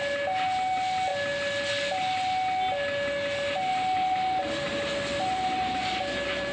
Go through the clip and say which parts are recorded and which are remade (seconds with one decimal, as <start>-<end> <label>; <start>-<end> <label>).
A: 0.0-6.5 recorded